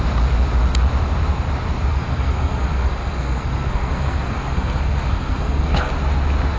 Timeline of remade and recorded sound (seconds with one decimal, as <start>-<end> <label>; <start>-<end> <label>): 0.0-1.9 recorded; 1.9-5.9 remade; 5.9-6.6 recorded

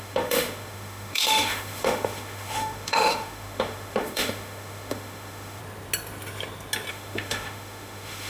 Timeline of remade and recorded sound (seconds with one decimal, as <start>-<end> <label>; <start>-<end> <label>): 0.0-5.6 remade; 5.6-6.9 recorded; 6.9-8.3 remade

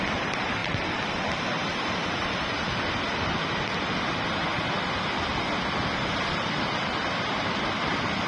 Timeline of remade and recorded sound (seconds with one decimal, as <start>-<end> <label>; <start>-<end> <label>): 0.0-8.3 recorded

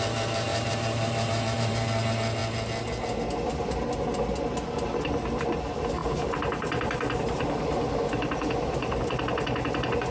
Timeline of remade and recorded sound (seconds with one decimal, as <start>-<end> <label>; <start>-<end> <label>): 0.0-0.5 recorded; 0.5-2.0 remade; 2.0-10.1 recorded

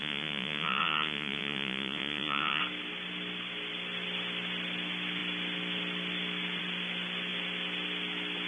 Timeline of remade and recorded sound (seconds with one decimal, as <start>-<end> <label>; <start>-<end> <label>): 0.0-2.6 remade; 2.6-8.5 recorded

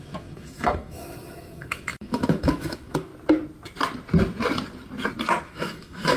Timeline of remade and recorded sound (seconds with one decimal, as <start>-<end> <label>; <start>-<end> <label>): 0.0-3.1 remade; 3.1-5.4 recorded; 5.4-6.2 remade

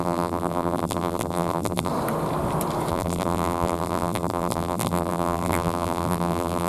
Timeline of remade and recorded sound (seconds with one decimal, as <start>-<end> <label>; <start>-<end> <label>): 0.0-1.9 remade; 1.9-2.9 recorded; 2.9-6.7 remade

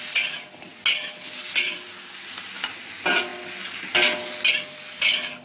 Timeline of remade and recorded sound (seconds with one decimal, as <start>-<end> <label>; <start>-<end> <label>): 0.0-5.4 recorded